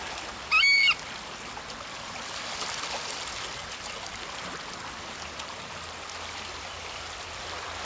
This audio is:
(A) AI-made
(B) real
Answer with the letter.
B